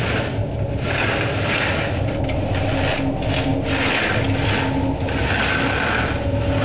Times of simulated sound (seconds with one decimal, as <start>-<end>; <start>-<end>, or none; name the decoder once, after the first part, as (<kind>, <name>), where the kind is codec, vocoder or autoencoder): none